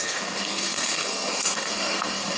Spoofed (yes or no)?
yes